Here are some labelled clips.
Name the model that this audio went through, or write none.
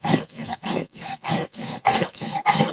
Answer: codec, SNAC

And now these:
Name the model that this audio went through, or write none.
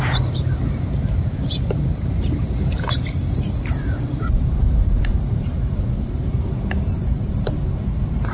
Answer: vocoder, BigVGAN v2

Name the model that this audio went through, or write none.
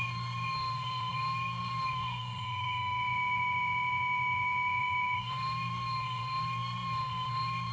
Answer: autoencoder, DAC-VAE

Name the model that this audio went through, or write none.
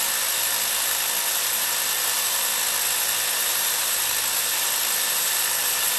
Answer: none